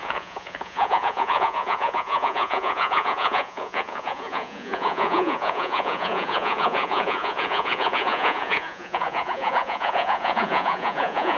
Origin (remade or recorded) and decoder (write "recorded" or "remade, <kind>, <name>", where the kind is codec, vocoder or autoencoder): remade, vocoder, Vocos